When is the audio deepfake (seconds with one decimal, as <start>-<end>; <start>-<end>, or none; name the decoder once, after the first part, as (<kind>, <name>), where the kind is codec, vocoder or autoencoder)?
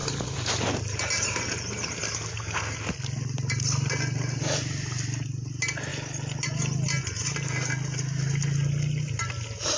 none